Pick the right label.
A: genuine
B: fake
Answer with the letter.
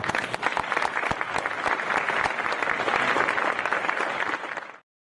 A